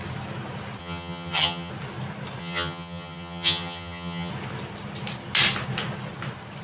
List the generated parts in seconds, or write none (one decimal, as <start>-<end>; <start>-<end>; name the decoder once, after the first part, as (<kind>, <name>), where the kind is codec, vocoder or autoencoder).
0.8-1.7 (vocoder, HiFi-GAN); 2.4-4.3